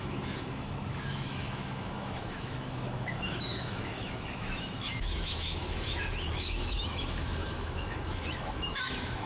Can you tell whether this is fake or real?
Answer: fake